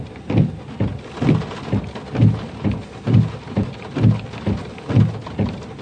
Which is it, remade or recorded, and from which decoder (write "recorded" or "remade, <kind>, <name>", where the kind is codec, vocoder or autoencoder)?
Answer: recorded